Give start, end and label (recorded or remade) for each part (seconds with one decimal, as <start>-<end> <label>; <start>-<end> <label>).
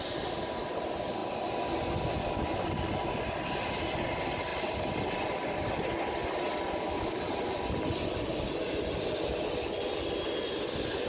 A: 0.0-11.1 recorded